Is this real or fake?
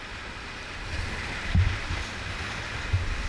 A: real